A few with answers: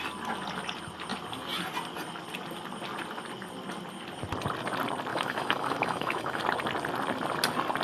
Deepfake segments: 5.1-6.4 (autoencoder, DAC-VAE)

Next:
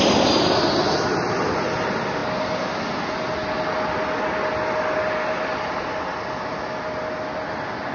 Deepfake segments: none

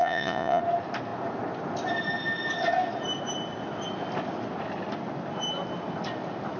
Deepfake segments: 0.0-0.6 (vocoder, Vocos)